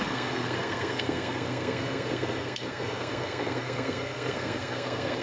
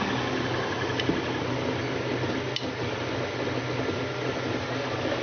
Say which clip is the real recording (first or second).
second